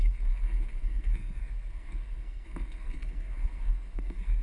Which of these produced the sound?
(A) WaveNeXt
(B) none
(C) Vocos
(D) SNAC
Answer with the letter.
D